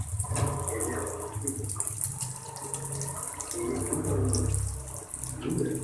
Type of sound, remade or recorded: recorded